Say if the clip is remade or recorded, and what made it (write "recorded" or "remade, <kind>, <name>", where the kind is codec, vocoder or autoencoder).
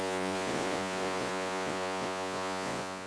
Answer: remade, vocoder, Vocos